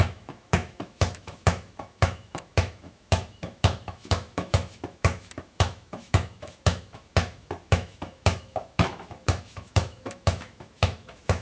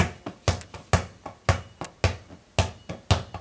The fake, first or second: first